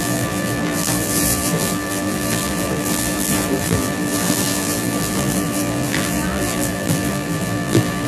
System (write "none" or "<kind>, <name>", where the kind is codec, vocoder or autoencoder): vocoder, BigVGAN v2